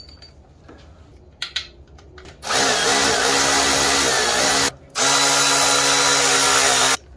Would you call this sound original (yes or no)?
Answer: yes